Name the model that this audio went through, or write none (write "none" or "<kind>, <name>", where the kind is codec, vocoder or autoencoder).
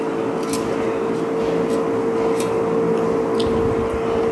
none